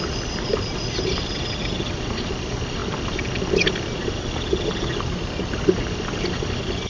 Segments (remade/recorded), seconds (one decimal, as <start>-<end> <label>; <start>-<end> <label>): 0.0-6.9 recorded